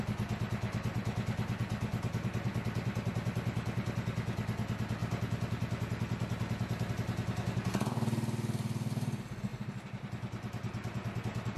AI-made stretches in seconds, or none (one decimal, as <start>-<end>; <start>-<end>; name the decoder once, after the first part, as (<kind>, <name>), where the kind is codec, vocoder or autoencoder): 9.5-11.2 (vocoder, BigVGAN v2)